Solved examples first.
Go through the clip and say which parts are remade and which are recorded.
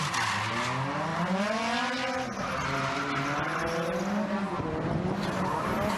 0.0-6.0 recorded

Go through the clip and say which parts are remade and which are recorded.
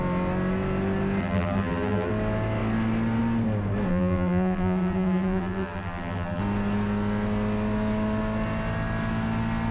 0.0-1.2 recorded; 1.2-2.1 remade; 2.1-3.9 recorded; 3.9-6.4 remade; 6.4-9.7 recorded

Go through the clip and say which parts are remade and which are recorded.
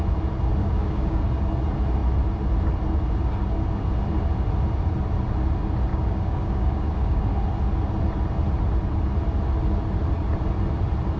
0.0-0.6 recorded; 0.6-1.2 remade; 1.2-5.9 recorded; 5.9-7.2 remade; 7.2-11.2 recorded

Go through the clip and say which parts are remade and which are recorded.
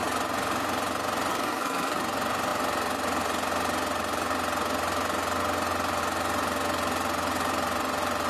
0.0-1.3 recorded; 1.3-2.0 remade; 2.0-8.3 recorded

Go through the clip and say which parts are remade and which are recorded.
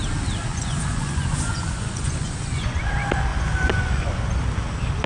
0.0-0.5 recorded; 0.5-2.9 remade; 2.9-3.3 recorded; 3.3-4.2 remade; 4.2-5.1 recorded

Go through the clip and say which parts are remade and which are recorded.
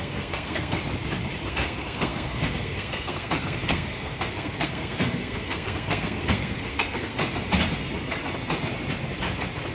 0.0-0.8 remade; 0.8-1.5 recorded; 1.5-7.2 remade; 7.2-9.7 recorded